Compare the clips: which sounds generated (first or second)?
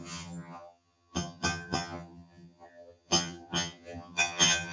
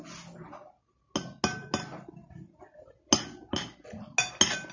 first